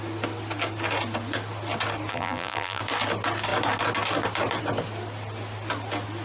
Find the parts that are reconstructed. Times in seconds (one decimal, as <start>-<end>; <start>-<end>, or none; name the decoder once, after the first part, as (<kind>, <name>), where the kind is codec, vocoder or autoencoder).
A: 2.1-2.8 (vocoder, BigVGAN v2)